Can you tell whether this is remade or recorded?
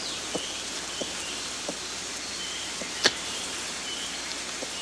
recorded